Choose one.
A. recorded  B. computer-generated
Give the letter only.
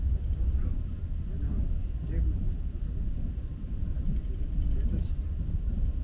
A